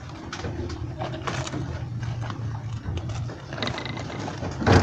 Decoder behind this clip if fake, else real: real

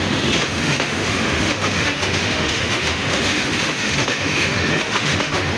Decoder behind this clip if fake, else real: fake, autoencoder, DAC-VAE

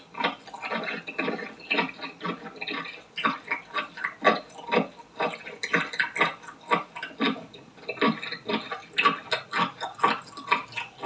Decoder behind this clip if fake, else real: real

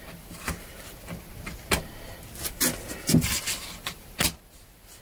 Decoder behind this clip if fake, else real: real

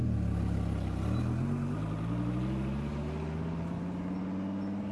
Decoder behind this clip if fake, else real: real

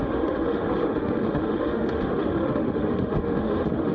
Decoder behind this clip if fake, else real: fake, autoencoder, DAC-VAE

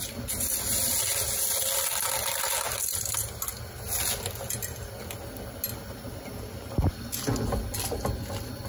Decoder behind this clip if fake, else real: real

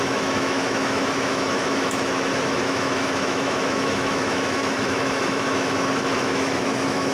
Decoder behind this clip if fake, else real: fake, autoencoder, DAC-VAE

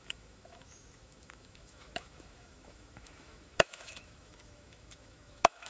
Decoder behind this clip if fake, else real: fake, autoencoder, DAC-VAE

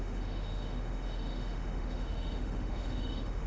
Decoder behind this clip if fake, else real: fake, autoencoder, DAC-VAE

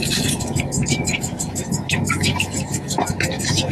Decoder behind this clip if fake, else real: fake, autoencoder, DAC-VAE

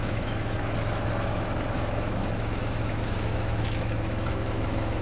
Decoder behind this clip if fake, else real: fake, autoencoder, DAC-VAE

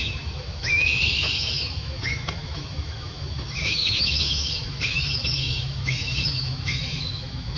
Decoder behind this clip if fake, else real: fake, autoencoder, DAC-VAE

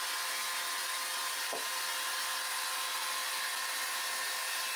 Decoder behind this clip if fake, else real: real